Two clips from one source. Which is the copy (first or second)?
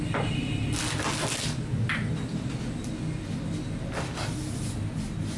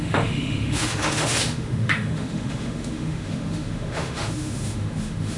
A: second